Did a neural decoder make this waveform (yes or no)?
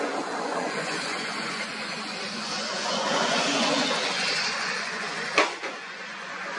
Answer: yes